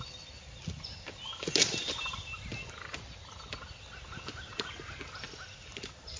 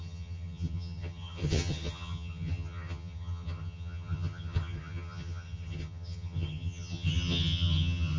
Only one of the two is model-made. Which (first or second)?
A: second